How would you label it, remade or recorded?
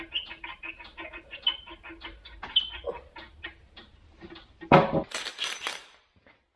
recorded